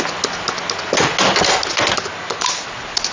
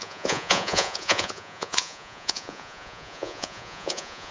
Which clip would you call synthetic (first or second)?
second